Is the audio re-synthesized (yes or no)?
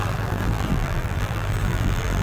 yes